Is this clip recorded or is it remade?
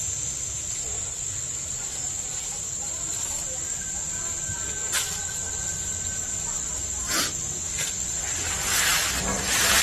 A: recorded